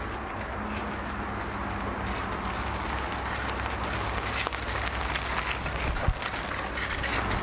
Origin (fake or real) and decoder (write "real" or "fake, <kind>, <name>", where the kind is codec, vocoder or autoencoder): real